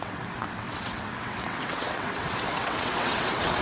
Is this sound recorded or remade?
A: remade